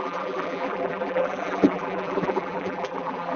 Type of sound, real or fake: fake